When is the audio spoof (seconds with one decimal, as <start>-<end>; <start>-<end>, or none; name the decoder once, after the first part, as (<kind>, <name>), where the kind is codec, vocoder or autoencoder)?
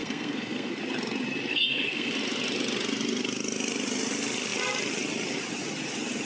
0.0-0.8 (codec, SNAC); 1.5-2.1